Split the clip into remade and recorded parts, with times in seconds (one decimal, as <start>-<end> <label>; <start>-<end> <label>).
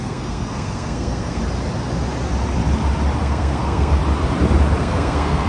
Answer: 0.0-1.4 remade; 1.4-3.2 recorded; 3.2-4.0 remade; 4.0-4.8 recorded; 4.8-5.5 remade